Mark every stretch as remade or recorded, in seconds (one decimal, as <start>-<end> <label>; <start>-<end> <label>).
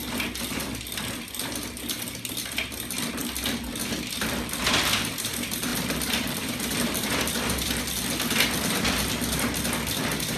0.0-0.7 remade; 0.7-5.7 recorded; 5.7-7.8 remade; 7.8-10.4 recorded